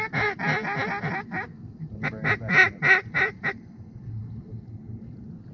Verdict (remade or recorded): recorded